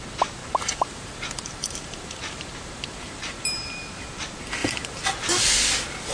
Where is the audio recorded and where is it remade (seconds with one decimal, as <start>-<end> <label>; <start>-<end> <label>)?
0.0-0.4 recorded; 0.4-4.1 remade; 4.1-4.6 recorded; 4.6-5.3 remade; 5.3-6.1 recorded